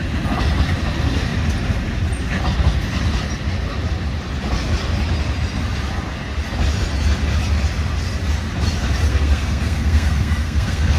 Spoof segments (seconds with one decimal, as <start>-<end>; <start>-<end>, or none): 9.1-11.0